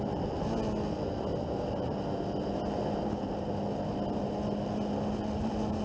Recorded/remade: recorded